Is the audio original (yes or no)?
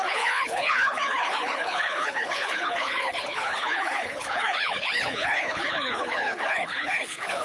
no